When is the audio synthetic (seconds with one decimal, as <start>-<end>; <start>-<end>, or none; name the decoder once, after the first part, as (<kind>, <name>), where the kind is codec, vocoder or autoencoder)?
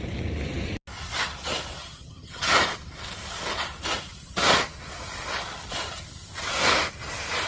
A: 1.8-2.5 (vocoder, HiFi-GAN)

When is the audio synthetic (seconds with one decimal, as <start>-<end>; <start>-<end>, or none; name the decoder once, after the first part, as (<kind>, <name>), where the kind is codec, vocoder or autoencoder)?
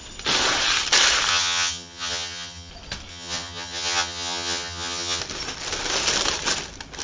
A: 1.3-2.7 (vocoder, HiFi-GAN); 3.1-5.2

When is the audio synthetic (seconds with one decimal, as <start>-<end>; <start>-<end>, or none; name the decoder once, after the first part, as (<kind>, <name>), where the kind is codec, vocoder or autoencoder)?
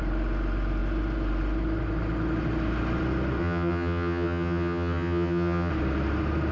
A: 3.4-5.7 (vocoder, HiFi-GAN)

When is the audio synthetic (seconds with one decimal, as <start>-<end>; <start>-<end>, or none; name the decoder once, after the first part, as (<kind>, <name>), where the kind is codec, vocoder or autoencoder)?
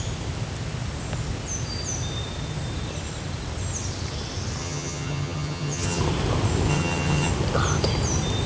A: 4.6-6.0 (vocoder, HiFi-GAN); 6.7-7.3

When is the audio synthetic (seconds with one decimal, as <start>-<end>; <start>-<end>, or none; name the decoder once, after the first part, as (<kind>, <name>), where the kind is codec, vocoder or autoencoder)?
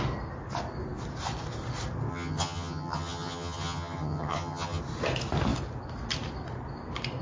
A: 2.1-4.8 (vocoder, HiFi-GAN)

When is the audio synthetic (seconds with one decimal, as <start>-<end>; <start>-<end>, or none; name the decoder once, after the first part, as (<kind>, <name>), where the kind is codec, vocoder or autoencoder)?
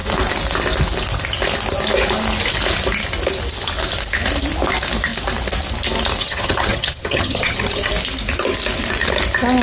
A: 6.2-7.9 (vocoder, HiFi-GAN)